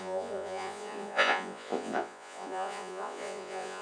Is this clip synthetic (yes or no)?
yes